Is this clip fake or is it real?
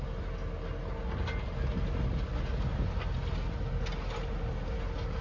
real